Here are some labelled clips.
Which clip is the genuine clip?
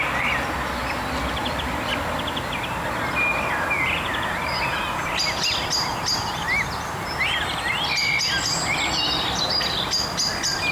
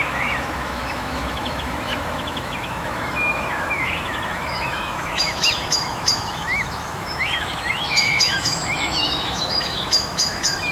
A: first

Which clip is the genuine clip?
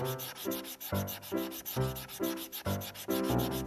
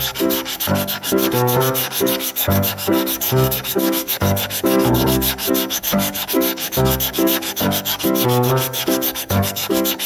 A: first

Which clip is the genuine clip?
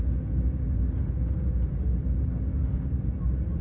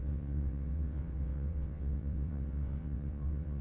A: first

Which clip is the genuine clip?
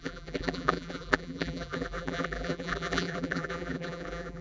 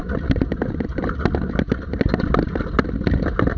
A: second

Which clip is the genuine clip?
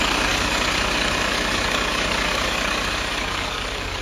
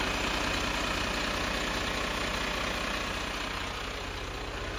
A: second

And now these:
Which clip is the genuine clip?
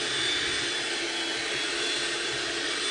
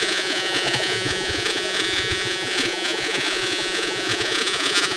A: first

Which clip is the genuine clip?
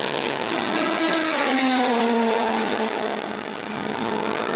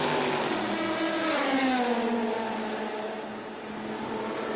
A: second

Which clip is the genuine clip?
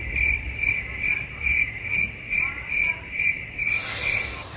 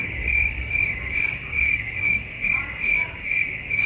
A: first